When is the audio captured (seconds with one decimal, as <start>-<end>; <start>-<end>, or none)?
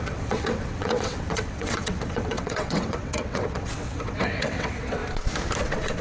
5.0-5.6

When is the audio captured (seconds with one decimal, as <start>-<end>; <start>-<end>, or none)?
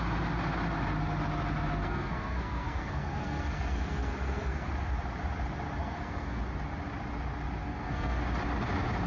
0.0-1.8; 4.7-5.8; 6.4-7.6; 8.2-9.1